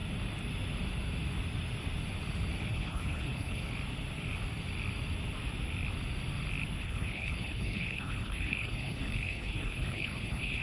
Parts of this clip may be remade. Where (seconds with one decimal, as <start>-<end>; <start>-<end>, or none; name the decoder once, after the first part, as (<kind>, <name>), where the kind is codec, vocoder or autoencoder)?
2.7-3.6 (codec, HILCodec); 6.8-10.6